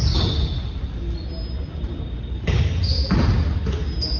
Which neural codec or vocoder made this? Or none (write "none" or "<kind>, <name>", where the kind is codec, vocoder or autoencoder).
none